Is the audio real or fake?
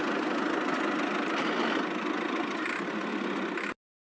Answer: real